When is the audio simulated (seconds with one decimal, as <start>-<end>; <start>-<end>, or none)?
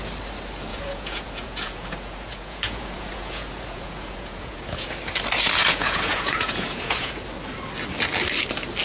0.7-4.9; 5.6-7.1